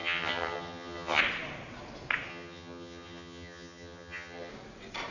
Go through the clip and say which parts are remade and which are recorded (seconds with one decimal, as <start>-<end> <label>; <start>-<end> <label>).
0.0-1.2 remade; 1.2-2.3 recorded; 2.3-4.5 remade; 4.5-5.1 recorded